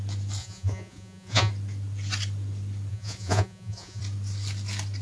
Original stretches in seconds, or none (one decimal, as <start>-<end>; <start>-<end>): 0.0-0.4; 1.5-2.9; 4.0-5.0